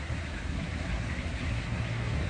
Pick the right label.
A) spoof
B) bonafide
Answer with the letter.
A